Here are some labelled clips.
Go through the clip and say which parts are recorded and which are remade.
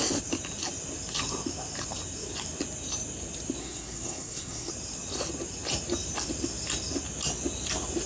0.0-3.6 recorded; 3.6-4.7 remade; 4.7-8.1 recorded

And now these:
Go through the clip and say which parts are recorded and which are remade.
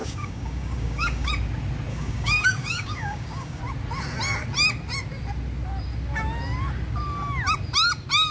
0.0-1.3 remade; 1.3-1.9 recorded; 1.9-3.6 remade; 3.6-8.3 recorded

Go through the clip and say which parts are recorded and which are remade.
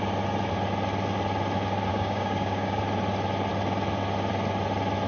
0.0-1.9 recorded; 1.9-2.8 remade; 2.8-5.1 recorded